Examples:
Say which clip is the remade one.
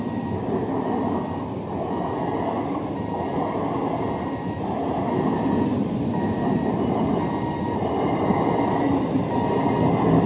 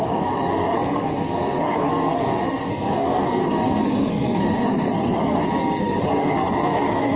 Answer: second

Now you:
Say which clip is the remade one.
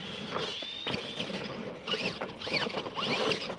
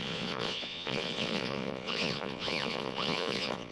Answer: second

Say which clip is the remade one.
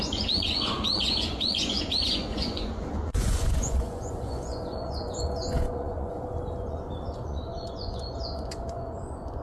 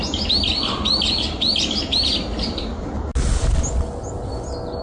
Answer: first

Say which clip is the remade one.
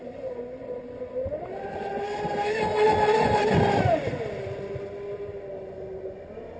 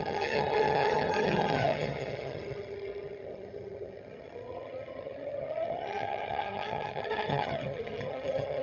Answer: second